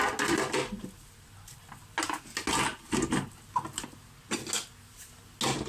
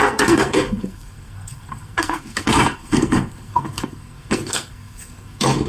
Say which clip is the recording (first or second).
first